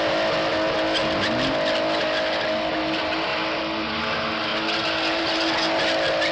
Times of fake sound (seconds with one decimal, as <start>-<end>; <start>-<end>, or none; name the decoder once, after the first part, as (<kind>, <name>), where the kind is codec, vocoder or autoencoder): none